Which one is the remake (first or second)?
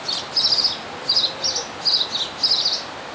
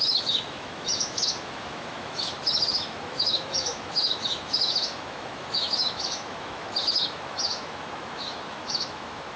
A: second